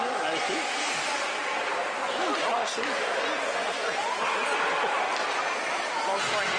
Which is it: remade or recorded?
recorded